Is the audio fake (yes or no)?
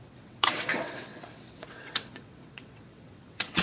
yes